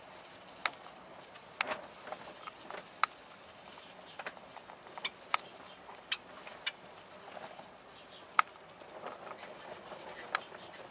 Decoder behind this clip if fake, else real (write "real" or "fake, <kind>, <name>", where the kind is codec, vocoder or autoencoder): real